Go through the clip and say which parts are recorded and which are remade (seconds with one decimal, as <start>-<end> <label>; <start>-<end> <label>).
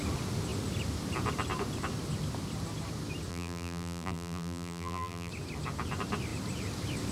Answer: 0.0-3.3 recorded; 3.3-5.3 remade; 5.3-7.1 recorded